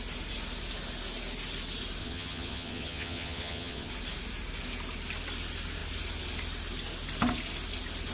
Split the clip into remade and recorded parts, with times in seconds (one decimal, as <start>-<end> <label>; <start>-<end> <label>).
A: 0.0-2.0 recorded; 2.0-3.9 remade; 3.9-8.1 recorded